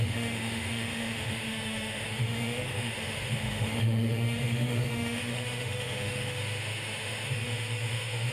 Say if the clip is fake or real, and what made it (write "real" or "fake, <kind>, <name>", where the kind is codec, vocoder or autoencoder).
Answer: fake, autoencoder, DAC-VAE